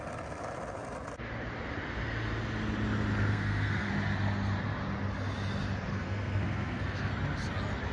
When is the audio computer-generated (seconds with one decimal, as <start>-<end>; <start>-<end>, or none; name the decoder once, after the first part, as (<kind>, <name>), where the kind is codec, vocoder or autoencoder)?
3.3-3.9 (codec, SNAC); 5.9-7.1